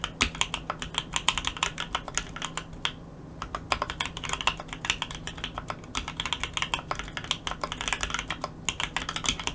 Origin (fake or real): real